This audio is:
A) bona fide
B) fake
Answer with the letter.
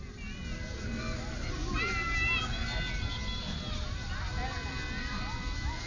A